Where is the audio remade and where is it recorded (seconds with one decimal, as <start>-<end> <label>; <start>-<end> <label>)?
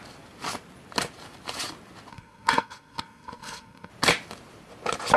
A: 0.0-2.1 recorded; 2.1-3.9 remade; 3.9-5.2 recorded